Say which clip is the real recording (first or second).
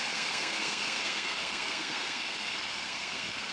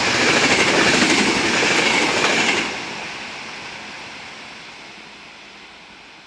second